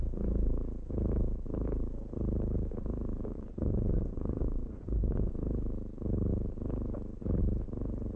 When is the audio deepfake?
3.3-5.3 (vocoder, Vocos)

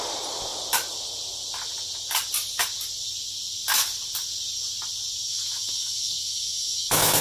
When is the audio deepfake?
5.3-7.2 (autoencoder, DAC-VAE)

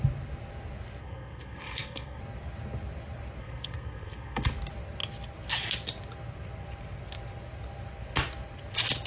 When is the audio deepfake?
1.0-2.2 (codec, SNAC); 3.4-4.5